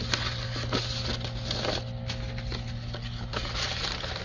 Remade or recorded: recorded